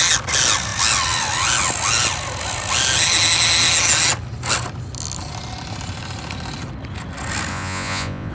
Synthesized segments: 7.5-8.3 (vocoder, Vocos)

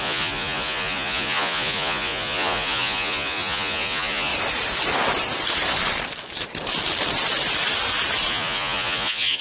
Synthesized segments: 0.0-4.3 (vocoder, Vocos); 8.3-9.4